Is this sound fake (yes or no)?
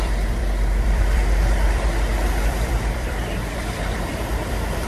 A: yes